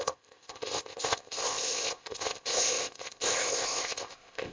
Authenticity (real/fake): fake